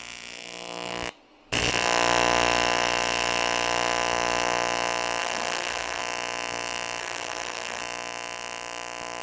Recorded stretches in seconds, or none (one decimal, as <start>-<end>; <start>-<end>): 0.0-5.2; 6.0-7.0; 7.8-9.2

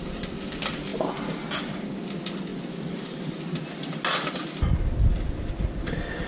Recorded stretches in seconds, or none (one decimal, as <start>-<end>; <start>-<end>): 0.0-6.3

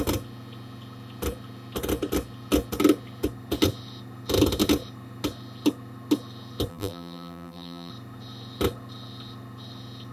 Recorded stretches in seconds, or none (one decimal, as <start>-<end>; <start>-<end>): 0.0-6.7; 7.9-10.1

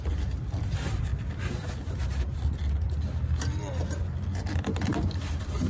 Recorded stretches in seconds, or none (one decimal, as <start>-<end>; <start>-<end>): 1.1-4.5

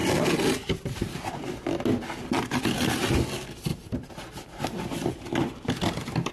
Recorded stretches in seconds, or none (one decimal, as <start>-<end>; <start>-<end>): 0.0-6.3

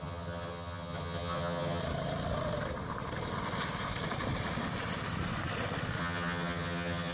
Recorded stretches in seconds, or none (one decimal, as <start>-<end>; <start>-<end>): 1.8-6.0